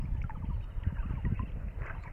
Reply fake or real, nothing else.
real